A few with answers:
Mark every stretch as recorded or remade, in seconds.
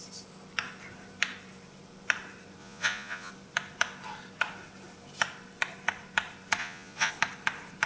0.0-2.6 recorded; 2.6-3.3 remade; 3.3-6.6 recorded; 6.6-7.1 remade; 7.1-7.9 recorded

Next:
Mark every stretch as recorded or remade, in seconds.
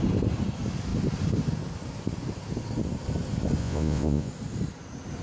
0.0-3.6 recorded; 3.6-4.3 remade; 4.3-5.2 recorded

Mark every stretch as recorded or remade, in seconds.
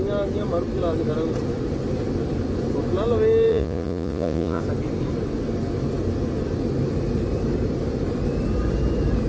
0.0-3.5 recorded; 3.5-4.6 remade; 4.6-9.3 recorded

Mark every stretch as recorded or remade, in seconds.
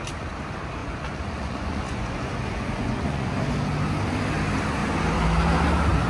0.0-0.8 recorded; 0.8-3.3 remade; 3.3-6.1 recorded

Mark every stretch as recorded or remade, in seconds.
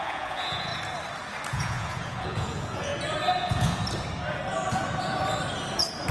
0.0-0.7 remade; 0.7-1.5 recorded; 1.5-2.9 remade; 2.9-3.4 recorded; 3.4-3.8 remade; 3.8-6.1 recorded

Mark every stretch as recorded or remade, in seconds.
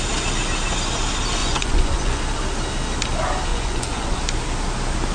0.0-1.4 recorded; 1.4-2.2 remade; 2.2-3.5 recorded; 3.5-4.2 remade; 4.2-5.1 recorded